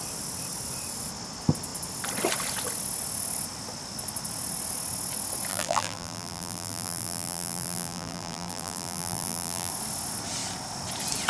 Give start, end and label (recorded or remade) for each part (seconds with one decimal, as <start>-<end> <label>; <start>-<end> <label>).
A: 0.0-5.5 recorded; 5.5-9.7 remade; 9.7-11.3 recorded